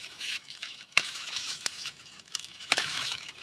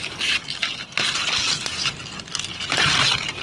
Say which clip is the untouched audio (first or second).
second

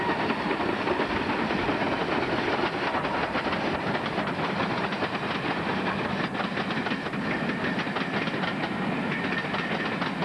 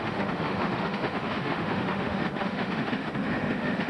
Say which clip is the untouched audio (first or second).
first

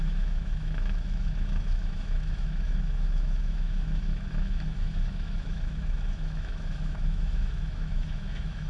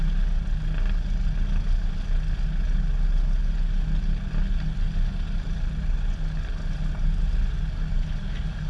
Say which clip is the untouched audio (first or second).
second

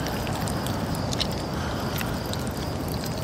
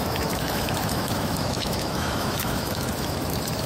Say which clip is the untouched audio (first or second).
first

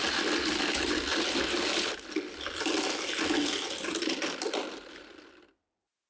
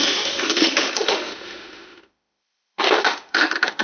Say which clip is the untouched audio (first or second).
first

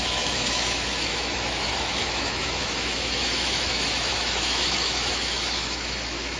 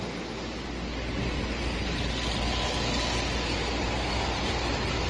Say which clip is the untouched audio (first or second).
second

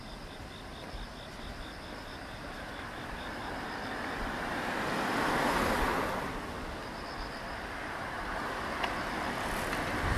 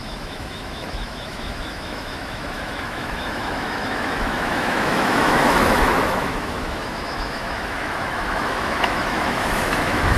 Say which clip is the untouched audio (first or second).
first